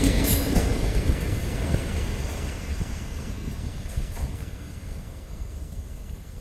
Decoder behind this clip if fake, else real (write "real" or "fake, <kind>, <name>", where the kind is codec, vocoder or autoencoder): fake, codec, SNAC